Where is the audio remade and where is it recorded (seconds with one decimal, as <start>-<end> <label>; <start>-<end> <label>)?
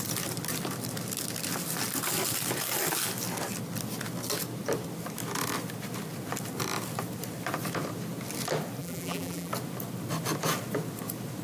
0.0-8.8 recorded; 8.8-9.5 remade; 9.5-11.4 recorded